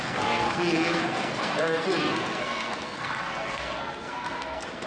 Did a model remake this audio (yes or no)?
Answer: yes